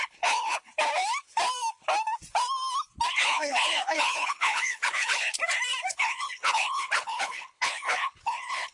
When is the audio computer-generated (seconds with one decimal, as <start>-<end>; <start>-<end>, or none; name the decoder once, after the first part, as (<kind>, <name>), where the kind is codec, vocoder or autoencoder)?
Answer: 0.0-0.7 (codec, HILCodec); 3.1-5.3; 5.9-8.7